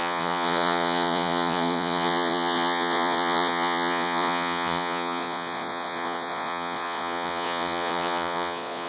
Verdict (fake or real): fake